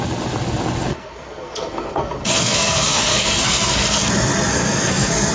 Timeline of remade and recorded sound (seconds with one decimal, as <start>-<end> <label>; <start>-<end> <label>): 0.0-0.9 recorded; 0.9-4.1 remade; 4.1-4.5 recorded; 4.5-5.3 remade